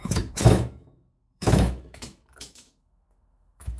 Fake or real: fake